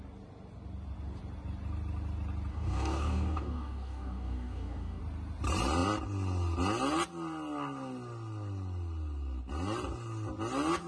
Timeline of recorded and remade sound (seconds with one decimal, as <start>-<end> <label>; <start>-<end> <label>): 0.0-2.5 recorded; 2.5-5.0 remade; 5.0-10.9 recorded